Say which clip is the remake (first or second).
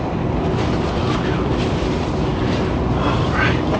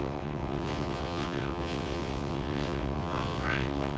second